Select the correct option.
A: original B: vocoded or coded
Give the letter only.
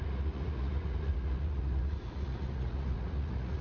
B